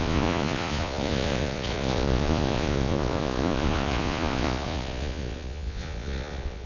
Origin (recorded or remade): remade